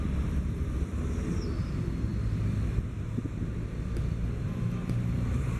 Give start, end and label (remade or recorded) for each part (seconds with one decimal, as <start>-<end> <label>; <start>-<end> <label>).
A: 0.0-5.6 remade